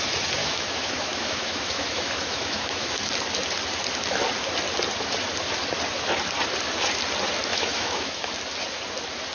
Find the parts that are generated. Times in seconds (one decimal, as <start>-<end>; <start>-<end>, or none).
0.4-3.1; 7.5-8.3